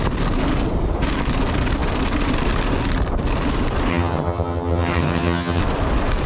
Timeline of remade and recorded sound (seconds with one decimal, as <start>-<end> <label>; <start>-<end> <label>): 0.0-3.9 recorded; 3.9-5.6 remade; 5.6-6.3 recorded